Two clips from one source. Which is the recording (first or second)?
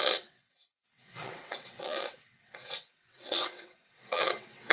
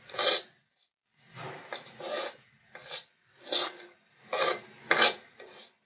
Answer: second